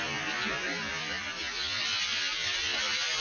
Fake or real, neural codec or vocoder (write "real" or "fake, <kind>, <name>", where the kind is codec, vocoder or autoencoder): fake, vocoder, BigVGAN v2